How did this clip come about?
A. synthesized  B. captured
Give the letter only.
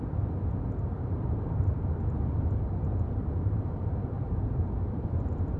A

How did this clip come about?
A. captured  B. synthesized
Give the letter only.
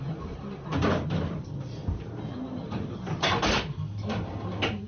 B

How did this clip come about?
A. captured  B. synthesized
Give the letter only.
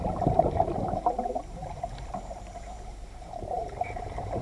B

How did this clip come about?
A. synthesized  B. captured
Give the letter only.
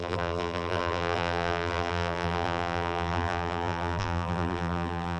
A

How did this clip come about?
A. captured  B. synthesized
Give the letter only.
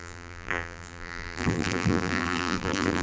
B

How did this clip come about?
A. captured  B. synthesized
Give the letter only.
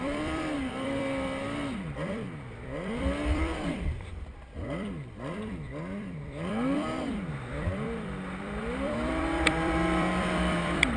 B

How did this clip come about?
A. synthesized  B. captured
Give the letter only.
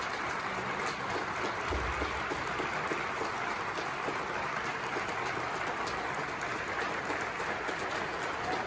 B